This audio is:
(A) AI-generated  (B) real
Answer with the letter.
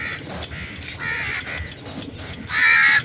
B